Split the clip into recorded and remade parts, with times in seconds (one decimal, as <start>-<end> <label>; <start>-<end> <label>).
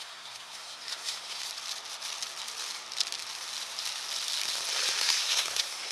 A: 0.0-1.5 remade; 1.5-5.0 recorded; 5.0-5.9 remade